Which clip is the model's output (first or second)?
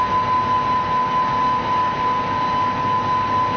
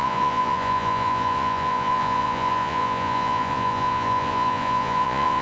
second